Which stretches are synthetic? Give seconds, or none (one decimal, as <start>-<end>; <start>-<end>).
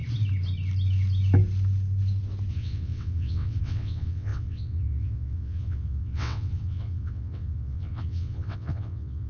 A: 2.5-9.3